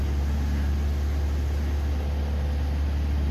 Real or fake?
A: real